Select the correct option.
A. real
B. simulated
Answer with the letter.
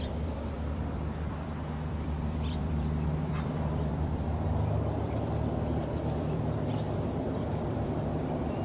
B